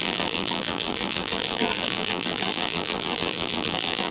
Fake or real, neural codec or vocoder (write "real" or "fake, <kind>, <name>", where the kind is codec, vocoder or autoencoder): fake, vocoder, BigVGAN v2